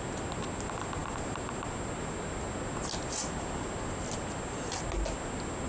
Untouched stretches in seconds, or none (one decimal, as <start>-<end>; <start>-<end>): 0.0-5.7